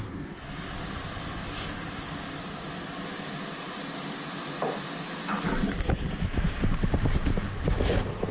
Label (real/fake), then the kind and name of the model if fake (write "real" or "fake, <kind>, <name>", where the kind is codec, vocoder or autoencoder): real